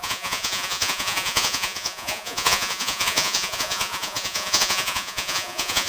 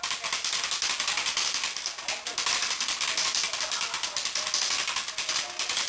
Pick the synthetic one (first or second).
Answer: first